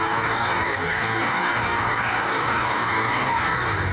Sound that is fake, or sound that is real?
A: fake